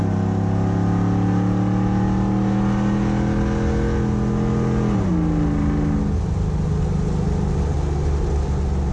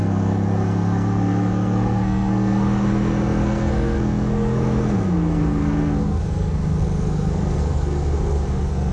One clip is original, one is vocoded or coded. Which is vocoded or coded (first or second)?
second